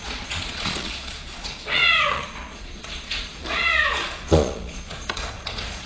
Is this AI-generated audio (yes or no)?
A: yes